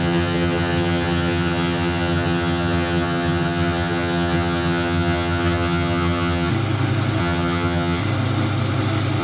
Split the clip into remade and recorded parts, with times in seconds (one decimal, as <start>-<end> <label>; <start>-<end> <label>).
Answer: 0.0-6.5 remade; 6.5-7.2 recorded; 7.2-8.0 remade; 8.0-9.2 recorded